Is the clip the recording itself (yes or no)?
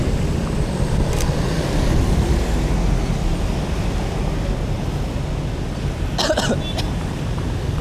yes